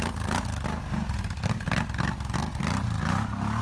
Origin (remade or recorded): recorded